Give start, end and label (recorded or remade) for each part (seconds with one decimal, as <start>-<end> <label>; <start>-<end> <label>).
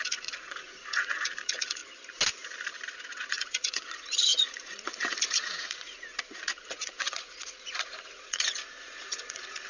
0.0-1.8 remade; 1.8-3.3 recorded; 3.3-9.7 remade